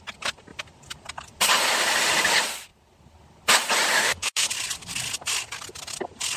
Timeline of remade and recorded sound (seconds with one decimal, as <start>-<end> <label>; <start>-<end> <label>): 0.0-4.0 recorded; 4.0-4.5 remade; 4.5-6.4 recorded